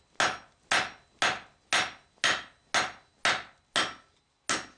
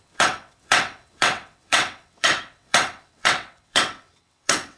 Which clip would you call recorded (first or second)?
first